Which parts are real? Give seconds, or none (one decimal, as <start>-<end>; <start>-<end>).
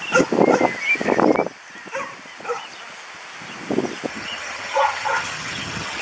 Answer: 0.0-4.1